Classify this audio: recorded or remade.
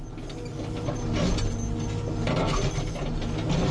recorded